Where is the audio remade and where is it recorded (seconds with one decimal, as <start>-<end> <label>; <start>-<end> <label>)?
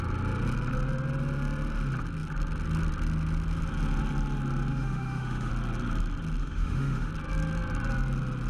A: 0.0-4.7 recorded; 4.7-5.5 remade; 5.5-6.4 recorded; 6.4-7.1 remade; 7.1-8.5 recorded